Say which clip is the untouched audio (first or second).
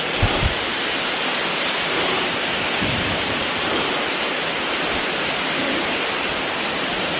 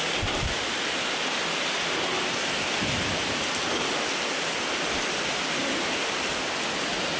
second